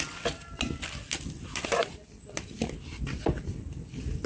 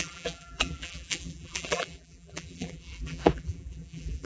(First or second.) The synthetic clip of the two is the second